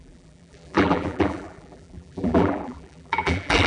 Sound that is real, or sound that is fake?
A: fake